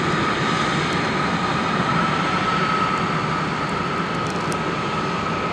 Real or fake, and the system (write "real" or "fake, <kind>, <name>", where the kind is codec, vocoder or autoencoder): real